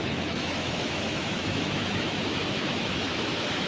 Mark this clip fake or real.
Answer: fake